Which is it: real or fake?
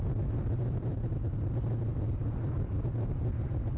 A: fake